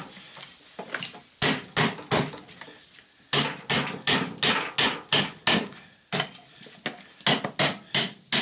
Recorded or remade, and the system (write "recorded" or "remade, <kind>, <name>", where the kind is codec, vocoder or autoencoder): recorded